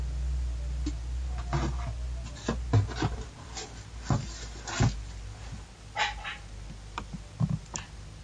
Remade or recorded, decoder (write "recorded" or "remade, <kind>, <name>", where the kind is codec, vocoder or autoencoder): recorded